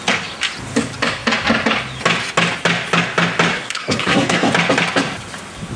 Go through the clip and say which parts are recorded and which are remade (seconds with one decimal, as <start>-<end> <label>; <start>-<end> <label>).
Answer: 0.0-3.5 recorded; 3.5-4.5 remade; 4.5-5.8 recorded